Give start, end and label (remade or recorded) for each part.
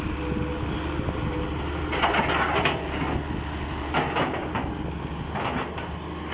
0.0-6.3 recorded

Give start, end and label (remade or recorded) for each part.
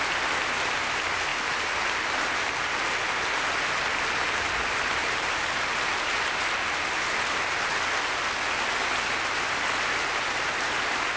0.0-11.2 recorded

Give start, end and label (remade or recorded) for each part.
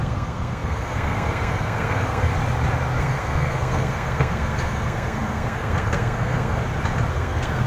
0.0-2.3 remade; 2.3-3.0 recorded; 3.0-6.6 remade; 6.6-7.1 recorded; 7.1-7.7 remade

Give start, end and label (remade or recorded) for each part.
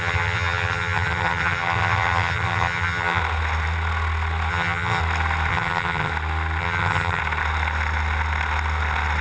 0.0-3.2 remade; 3.2-4.5 recorded; 4.5-5.0 remade; 5.0-5.5 recorded; 5.5-6.1 remade; 6.1-6.6 recorded; 6.6-7.2 remade; 7.2-9.2 recorded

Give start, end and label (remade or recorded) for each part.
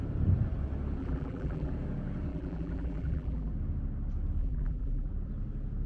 0.0-1.0 recorded; 1.0-1.7 remade; 1.7-2.3 recorded; 2.3-3.5 remade; 3.5-4.4 recorded; 4.4-5.1 remade; 5.1-5.9 recorded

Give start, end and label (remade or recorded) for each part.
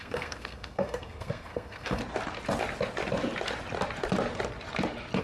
0.0-2.0 remade; 2.0-5.2 recorded